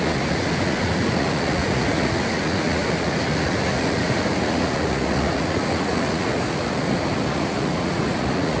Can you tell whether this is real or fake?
fake